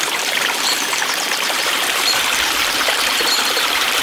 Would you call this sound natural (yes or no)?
no